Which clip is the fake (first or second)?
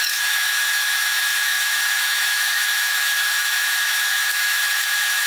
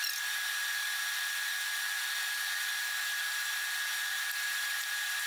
first